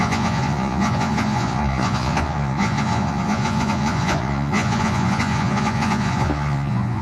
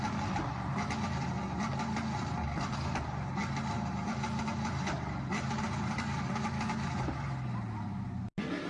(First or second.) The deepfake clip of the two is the first